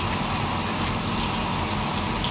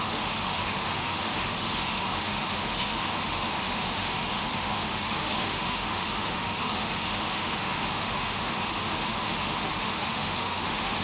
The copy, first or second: second